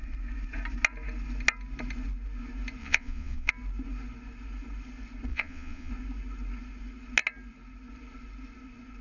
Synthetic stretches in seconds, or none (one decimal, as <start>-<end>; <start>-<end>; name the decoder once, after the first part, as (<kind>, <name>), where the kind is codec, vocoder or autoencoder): 2.8-3.5 (vocoder, Vocos); 5.3-5.9